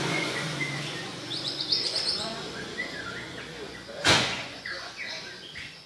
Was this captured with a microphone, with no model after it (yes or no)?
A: no